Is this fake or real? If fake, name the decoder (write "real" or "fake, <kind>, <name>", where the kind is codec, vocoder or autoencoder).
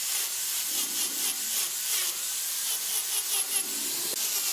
real